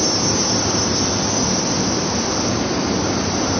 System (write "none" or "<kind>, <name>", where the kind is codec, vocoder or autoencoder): none